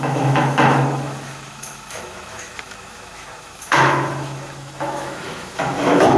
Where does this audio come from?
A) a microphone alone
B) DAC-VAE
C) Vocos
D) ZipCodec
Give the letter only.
B